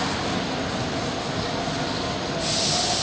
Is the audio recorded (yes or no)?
yes